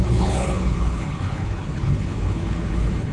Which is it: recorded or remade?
remade